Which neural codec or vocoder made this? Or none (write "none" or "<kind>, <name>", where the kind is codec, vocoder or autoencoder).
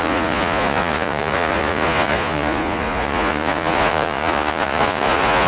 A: vocoder, Vocos